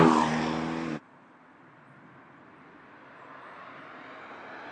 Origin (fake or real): real